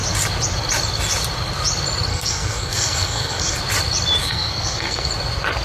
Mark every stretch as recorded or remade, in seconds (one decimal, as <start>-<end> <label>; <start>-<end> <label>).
0.0-2.1 recorded; 2.1-3.6 remade; 3.6-4.2 recorded; 4.2-5.1 remade; 5.1-5.6 recorded